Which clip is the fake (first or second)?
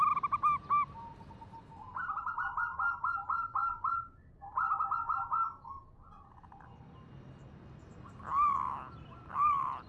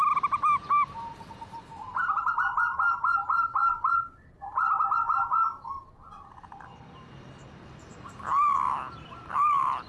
second